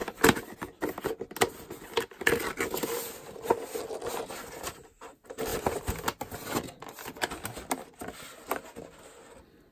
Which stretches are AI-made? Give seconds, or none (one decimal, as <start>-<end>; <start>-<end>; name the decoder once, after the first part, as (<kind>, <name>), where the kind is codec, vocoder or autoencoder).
none